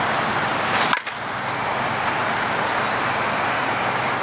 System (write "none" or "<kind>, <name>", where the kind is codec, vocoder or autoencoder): none